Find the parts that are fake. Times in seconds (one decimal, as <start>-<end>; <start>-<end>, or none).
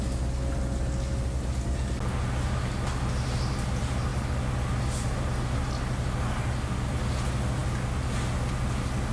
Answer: none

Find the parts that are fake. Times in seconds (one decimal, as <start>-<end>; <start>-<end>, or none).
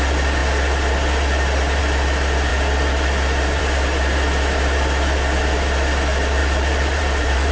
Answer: 6.4-7.5